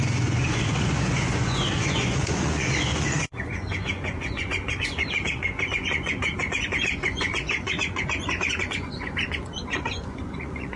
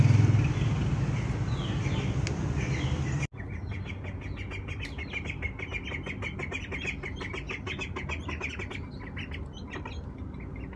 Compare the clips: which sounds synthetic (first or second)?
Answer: first